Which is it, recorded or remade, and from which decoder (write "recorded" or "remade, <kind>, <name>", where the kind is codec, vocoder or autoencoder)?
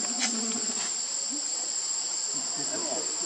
recorded